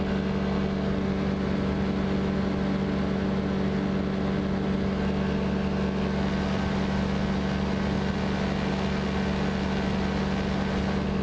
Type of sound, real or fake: real